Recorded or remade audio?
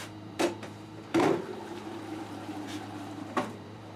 remade